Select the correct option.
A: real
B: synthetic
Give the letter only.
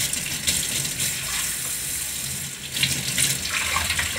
A